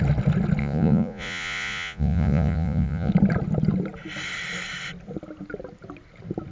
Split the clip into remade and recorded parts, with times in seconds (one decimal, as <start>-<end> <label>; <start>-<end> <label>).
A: 0.0-0.6 recorded; 0.6-3.1 remade; 3.1-6.5 recorded